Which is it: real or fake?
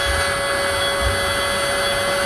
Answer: real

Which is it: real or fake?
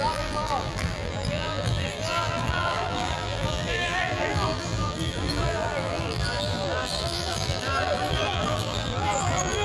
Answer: fake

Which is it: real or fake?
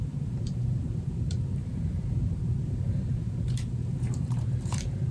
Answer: fake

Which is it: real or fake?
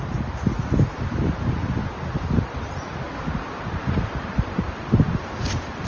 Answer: fake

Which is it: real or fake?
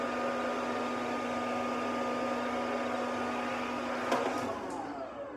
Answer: real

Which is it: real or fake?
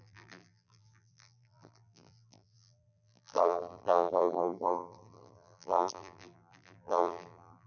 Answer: fake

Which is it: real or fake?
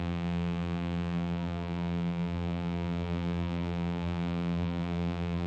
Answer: fake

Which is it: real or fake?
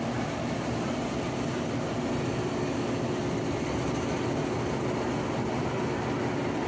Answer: real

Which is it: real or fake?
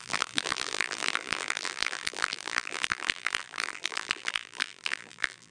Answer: fake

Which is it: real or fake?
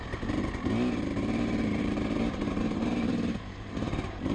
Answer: fake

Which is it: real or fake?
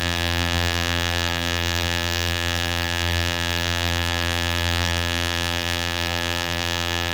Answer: fake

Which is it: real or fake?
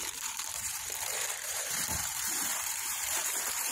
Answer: fake